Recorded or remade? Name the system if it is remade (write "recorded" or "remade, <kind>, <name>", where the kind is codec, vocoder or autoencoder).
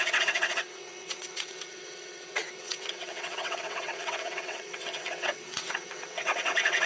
remade, vocoder, WaveNeXt